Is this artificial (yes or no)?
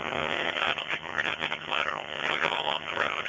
yes